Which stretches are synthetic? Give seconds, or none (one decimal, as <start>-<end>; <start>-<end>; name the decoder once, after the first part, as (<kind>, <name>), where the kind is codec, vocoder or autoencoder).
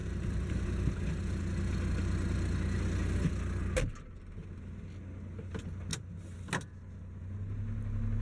0.0-0.6 (vocoder, BigVGAN v2); 5.9-6.5